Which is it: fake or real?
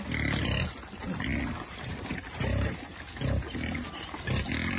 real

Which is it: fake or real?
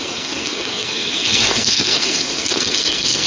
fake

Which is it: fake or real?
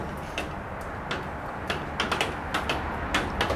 real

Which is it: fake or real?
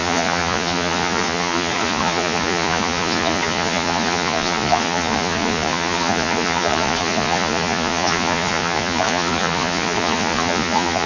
fake